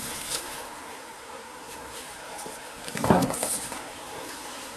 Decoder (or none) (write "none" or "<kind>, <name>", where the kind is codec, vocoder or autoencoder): codec, SNAC